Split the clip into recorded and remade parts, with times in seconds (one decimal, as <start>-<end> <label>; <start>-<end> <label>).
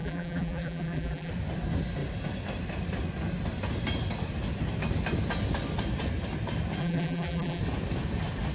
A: 0.0-1.3 remade; 1.3-6.8 recorded; 6.8-7.6 remade; 7.6-8.5 recorded